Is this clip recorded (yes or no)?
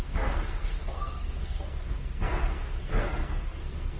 no